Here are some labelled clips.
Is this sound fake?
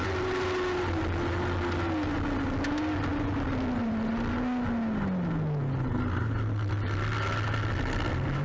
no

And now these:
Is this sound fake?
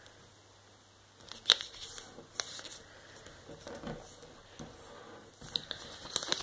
no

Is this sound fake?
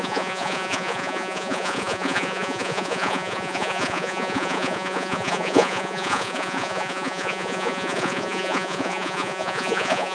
yes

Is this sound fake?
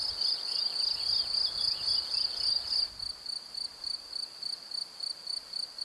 no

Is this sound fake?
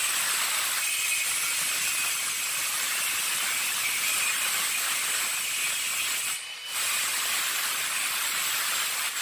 no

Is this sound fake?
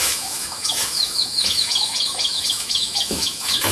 yes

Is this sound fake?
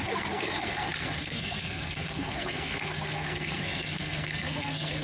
yes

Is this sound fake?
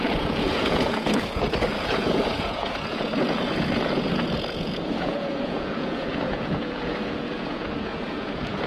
yes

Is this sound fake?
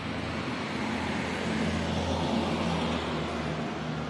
no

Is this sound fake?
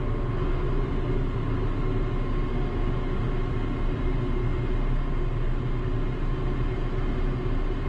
no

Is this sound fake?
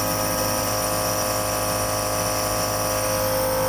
no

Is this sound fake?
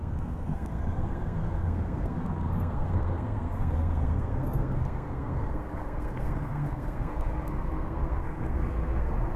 yes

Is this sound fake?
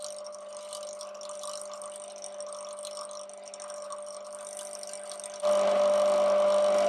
no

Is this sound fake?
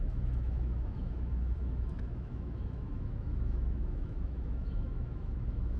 yes